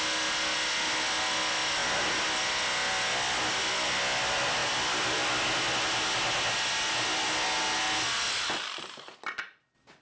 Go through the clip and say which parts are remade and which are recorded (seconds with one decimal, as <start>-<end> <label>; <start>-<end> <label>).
0.0-10.0 recorded